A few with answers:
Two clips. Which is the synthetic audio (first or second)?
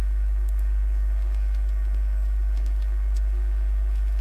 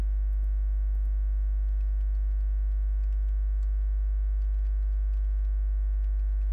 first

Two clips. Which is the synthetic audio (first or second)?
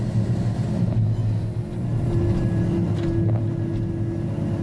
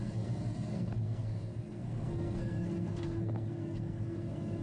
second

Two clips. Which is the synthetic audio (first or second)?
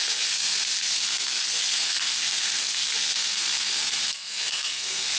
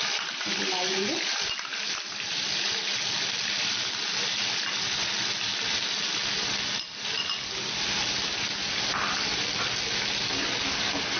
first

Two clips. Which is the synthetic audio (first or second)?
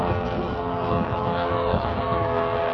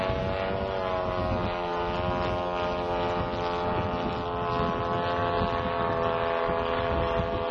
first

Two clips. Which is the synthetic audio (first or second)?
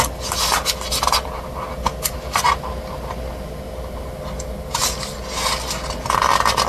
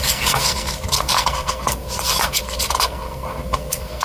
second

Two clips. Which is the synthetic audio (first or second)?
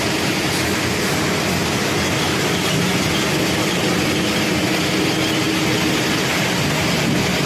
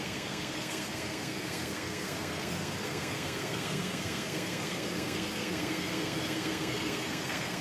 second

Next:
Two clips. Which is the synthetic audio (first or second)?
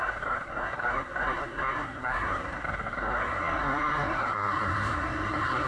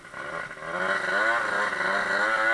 first